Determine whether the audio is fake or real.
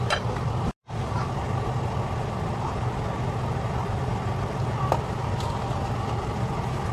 real